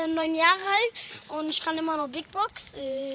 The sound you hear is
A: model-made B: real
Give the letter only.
A